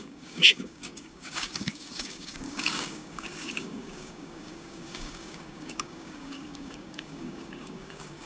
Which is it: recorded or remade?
remade